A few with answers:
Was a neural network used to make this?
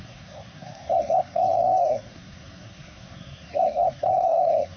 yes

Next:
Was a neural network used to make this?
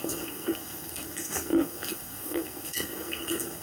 yes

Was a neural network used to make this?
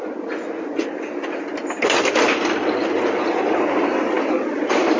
no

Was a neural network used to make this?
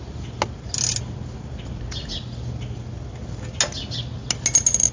no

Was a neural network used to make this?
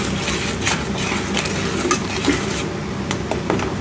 no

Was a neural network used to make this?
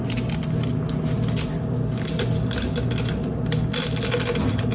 no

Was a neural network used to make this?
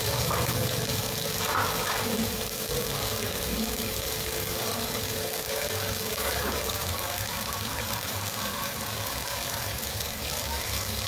yes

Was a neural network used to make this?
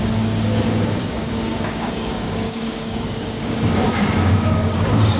yes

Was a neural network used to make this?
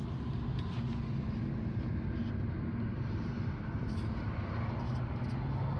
no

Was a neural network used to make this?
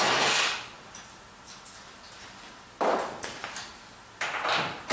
no